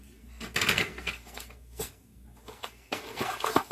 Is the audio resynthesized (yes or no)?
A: yes